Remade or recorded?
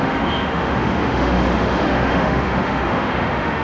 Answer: remade